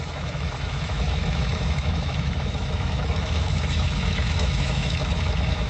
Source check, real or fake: fake